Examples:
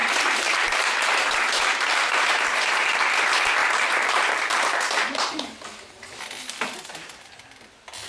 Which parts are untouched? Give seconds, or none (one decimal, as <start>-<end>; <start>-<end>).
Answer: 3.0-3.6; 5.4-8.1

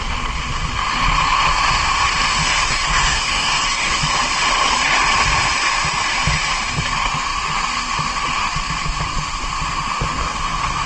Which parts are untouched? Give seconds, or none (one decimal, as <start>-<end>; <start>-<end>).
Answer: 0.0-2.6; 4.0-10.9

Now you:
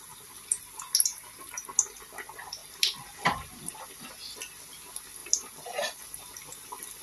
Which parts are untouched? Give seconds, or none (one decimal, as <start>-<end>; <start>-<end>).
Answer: 0.0-2.6; 4.1-7.0